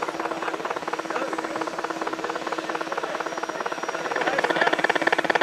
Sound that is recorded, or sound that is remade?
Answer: recorded